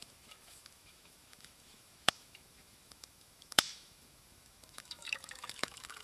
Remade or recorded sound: remade